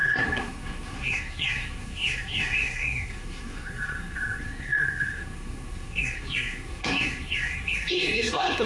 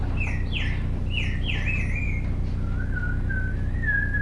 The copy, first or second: first